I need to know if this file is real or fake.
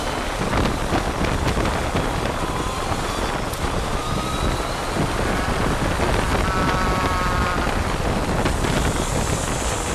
real